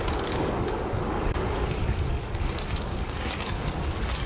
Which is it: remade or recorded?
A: remade